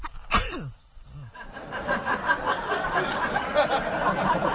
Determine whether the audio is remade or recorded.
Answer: recorded